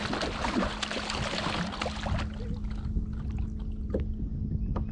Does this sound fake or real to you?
real